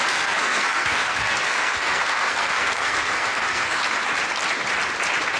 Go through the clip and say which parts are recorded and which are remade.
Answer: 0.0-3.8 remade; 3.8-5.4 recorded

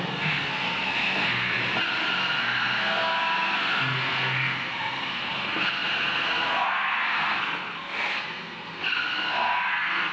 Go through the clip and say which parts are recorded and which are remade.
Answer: 0.0-1.5 remade; 1.5-2.2 recorded; 2.2-10.1 remade

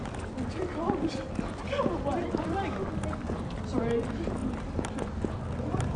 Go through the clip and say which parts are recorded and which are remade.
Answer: 0.0-6.0 recorded